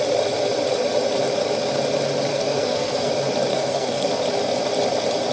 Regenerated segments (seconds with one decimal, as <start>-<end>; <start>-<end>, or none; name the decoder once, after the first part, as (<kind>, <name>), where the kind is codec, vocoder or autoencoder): 2.3-3.1 (codec, SNAC); 3.5-4.1